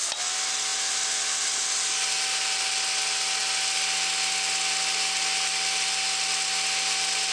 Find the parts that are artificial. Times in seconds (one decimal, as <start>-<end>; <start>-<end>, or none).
none